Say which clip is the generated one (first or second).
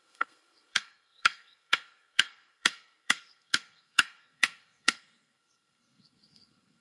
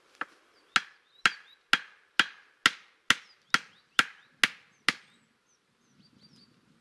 first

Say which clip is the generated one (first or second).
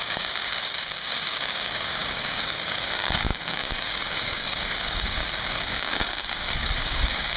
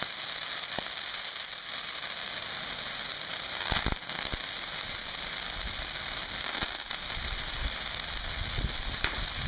first